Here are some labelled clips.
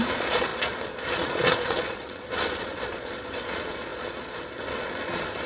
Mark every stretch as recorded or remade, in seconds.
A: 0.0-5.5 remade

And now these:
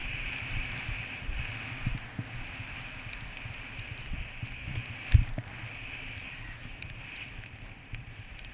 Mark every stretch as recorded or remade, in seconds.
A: 0.0-8.5 recorded